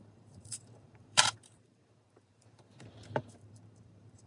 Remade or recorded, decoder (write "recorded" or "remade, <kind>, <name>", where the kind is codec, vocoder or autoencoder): remade, vocoder, BigVGAN v2